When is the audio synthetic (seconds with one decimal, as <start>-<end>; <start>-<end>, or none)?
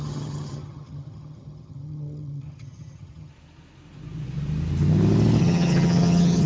0.0-3.3; 5.4-6.5